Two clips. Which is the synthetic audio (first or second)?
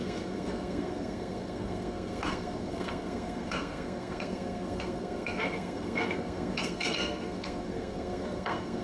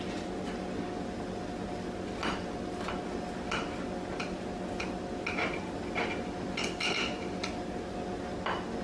first